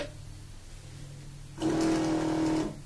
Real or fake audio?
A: real